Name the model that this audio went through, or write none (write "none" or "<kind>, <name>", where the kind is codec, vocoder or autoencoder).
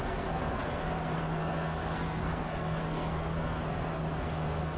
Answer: codec, SNAC